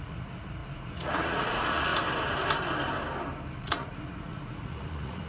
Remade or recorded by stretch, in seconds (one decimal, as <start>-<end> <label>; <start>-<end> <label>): 0.0-1.9 remade; 1.9-3.6 recorded; 3.6-5.3 remade